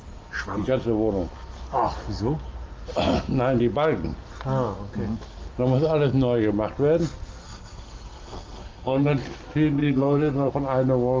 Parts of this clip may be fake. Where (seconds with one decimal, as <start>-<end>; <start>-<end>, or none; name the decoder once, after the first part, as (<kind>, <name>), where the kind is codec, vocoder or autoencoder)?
7.4-9.1 (codec, SNAC); 9.8-10.5